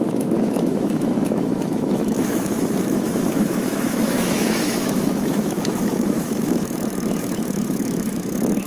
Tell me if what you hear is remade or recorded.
remade